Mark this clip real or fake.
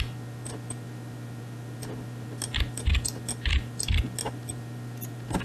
real